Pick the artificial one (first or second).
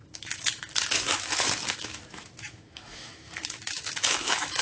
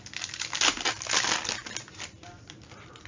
first